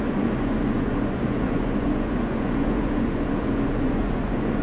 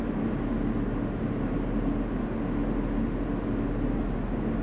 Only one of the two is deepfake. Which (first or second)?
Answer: first